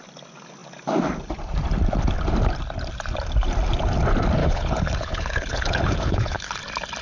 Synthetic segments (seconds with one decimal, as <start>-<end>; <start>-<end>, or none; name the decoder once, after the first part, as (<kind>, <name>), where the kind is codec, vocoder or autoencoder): 4.4-6.6 (codec, HILCodec)